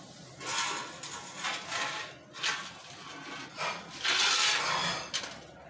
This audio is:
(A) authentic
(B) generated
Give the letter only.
A